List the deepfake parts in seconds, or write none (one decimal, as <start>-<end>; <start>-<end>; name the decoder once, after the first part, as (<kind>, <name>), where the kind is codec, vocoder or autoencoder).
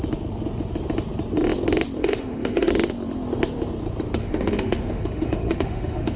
2.0-2.7 (autoencoder, DAC-VAE); 4.2-6.2